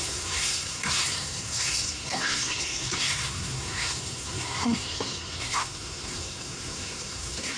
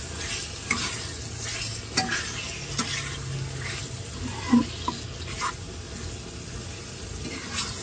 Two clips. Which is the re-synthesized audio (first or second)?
first